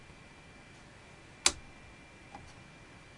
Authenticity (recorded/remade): recorded